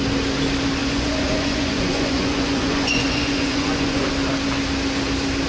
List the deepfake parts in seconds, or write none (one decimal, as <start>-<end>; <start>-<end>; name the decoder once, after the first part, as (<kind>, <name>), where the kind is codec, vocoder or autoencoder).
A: 0.8-4.1 (vocoder, Vocos)